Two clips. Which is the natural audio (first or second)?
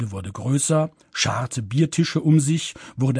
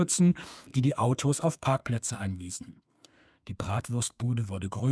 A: first